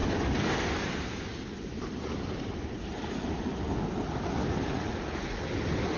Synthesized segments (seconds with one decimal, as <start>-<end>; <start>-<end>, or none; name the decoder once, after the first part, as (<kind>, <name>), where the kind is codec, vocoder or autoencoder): 4.7-5.4 (vocoder, Vocos)